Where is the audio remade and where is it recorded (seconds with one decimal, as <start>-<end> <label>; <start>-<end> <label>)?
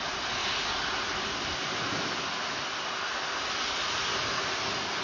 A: 0.0-5.0 recorded